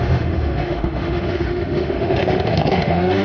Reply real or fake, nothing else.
fake